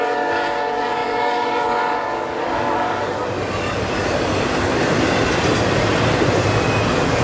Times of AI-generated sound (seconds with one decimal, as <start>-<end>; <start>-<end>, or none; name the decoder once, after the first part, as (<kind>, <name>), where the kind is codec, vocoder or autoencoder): 0.0-3.2 (codec, DAC)